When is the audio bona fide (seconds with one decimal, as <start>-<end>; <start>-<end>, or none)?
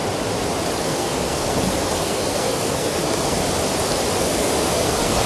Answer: 0.0-0.8; 3.4-4.2